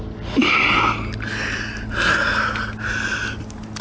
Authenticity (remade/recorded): recorded